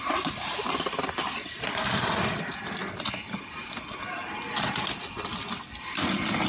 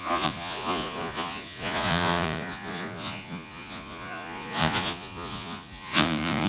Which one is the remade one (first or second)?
second